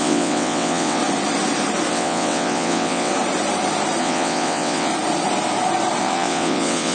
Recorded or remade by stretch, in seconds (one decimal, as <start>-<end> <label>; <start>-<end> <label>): 0.0-1.0 remade; 1.0-1.9 recorded; 1.9-3.1 remade; 3.1-4.0 recorded; 4.0-4.9 remade; 4.9-6.0 recorded; 6.0-6.9 remade